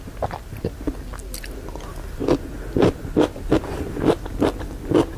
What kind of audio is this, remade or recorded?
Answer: recorded